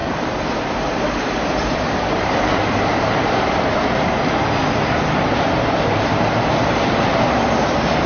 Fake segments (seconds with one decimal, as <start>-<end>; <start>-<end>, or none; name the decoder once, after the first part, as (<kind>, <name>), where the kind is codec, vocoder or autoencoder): 0.0-3.5 (vocoder, BigVGAN v2)